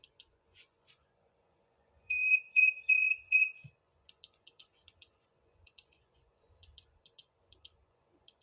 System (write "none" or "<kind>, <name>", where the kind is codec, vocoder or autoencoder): vocoder, Vocos